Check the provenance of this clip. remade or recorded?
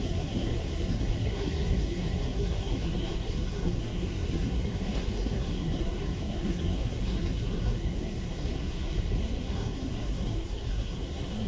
remade